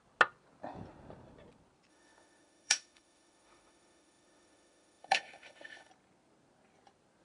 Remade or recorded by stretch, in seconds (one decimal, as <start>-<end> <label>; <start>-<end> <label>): 0.0-1.9 recorded; 1.9-5.9 remade; 5.9-7.2 recorded